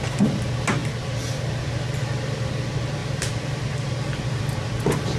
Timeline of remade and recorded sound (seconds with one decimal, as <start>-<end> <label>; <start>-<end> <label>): 0.0-3.0 recorded; 3.0-5.2 remade